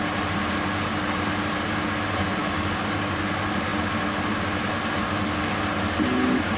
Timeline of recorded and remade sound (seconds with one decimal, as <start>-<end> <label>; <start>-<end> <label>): 0.0-6.6 recorded